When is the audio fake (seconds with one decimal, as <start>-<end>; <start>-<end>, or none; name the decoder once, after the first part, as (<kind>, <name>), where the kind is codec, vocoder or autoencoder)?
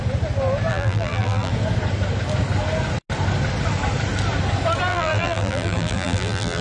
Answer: 0.7-1.5 (vocoder, BigVGAN v2); 4.9-6.6